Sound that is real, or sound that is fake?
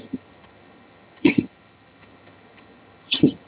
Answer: fake